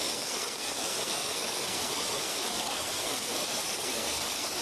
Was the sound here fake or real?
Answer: fake